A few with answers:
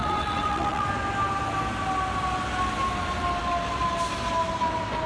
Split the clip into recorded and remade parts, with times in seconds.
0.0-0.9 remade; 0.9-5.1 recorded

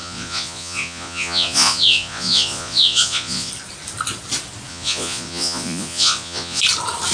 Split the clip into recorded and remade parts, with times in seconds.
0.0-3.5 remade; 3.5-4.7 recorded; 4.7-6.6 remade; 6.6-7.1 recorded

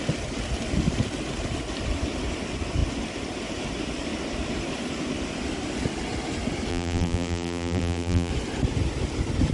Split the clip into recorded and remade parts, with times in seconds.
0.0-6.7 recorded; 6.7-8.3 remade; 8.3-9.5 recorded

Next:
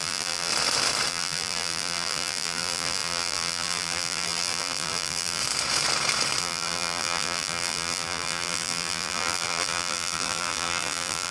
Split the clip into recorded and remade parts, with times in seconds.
0.0-0.5 remade; 0.5-1.1 recorded; 1.1-5.4 remade; 5.4-6.4 recorded; 6.4-11.3 remade

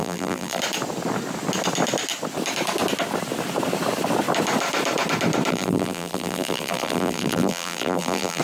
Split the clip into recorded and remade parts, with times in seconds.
0.0-0.6 remade; 0.6-5.5 recorded; 5.5-8.4 remade